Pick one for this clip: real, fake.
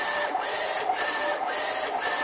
real